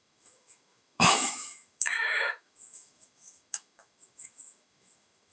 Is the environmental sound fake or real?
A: fake